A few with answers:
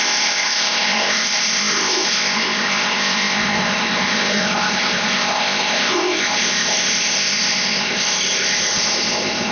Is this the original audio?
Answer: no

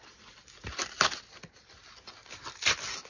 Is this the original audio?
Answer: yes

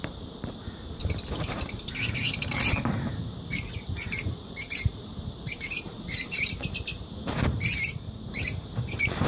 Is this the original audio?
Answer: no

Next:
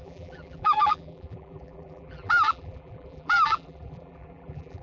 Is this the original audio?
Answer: no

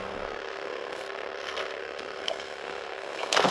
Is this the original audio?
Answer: no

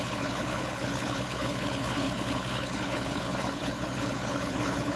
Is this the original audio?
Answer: no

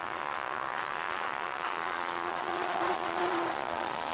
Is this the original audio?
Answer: no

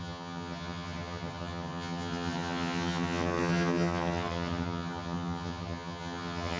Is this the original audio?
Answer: no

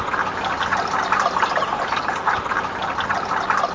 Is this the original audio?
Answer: yes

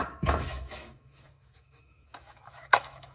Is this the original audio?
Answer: no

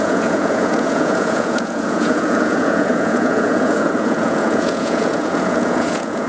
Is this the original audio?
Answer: no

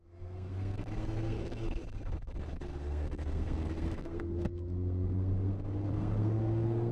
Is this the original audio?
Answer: no